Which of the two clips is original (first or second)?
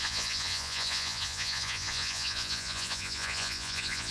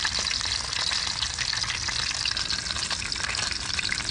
second